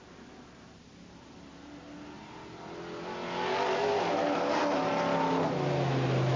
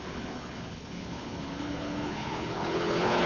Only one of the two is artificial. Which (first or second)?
second